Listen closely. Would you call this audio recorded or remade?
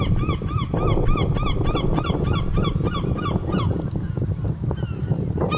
recorded